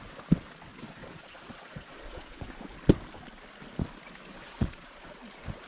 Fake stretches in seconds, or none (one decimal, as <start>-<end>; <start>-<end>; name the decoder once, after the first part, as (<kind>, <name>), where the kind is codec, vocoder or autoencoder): 1.0-2.5 (vocoder, Vocos); 4.3-5.1